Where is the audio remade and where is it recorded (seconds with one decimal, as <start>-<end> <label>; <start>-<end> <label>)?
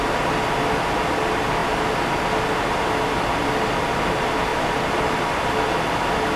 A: 0.0-4.5 recorded; 4.5-5.1 remade; 5.1-6.4 recorded